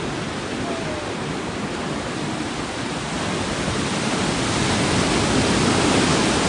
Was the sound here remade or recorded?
recorded